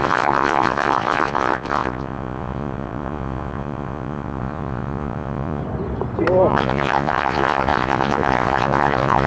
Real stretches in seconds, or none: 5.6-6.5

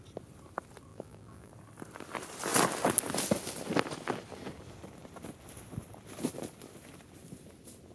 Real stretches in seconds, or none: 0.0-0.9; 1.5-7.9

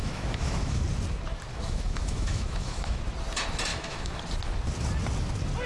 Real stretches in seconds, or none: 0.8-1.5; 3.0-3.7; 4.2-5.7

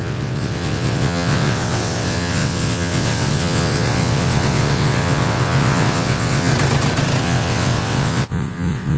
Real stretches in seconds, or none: 6.5-7.2

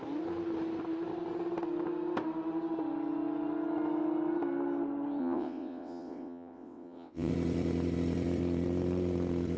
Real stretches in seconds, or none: 0.0-5.2; 7.3-9.6